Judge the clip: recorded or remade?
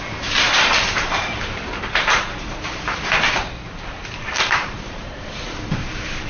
remade